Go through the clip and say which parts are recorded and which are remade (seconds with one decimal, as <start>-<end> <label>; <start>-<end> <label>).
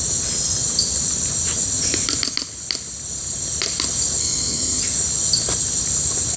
0.0-4.2 recorded; 4.2-4.8 remade; 4.8-6.4 recorded